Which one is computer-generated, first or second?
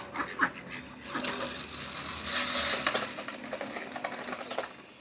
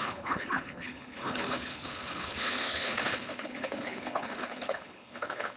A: second